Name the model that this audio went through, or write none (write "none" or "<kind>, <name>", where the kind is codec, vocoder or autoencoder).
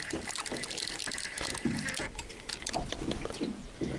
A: none